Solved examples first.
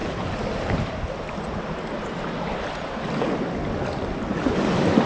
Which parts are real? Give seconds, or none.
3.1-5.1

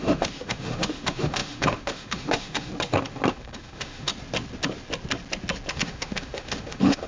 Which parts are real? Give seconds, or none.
2.7-3.3; 4.1-5.7

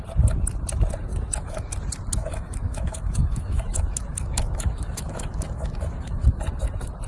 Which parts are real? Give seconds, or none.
0.0-1.1; 1.7-2.1; 6.4-7.1

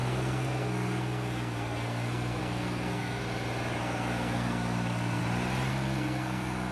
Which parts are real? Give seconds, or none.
3.2-3.8; 5.2-5.7

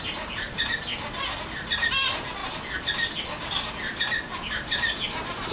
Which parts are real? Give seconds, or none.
0.9-1.6; 2.4-4.3

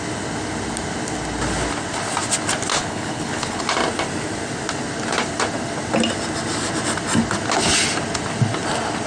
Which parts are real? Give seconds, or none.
0.0-2.7; 3.6-9.1